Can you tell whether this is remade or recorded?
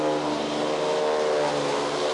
recorded